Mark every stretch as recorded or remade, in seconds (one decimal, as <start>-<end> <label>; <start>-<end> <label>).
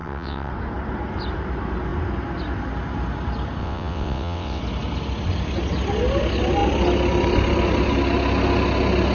0.0-0.5 remade; 0.5-3.6 recorded; 3.6-4.6 remade; 4.6-9.1 recorded